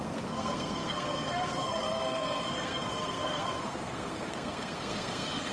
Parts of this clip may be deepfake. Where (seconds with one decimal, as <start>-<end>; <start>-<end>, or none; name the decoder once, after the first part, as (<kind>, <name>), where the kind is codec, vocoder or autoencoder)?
0.0-5.5 (codec, SNAC)